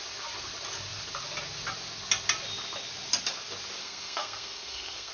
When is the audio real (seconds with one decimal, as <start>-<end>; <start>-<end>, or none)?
0.0-3.8